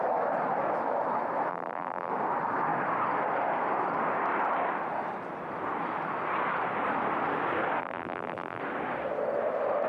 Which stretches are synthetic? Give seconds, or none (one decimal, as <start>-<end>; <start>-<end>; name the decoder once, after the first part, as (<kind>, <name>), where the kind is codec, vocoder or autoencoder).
1.5-2.1 (vocoder, BigVGAN v2); 7.8-8.6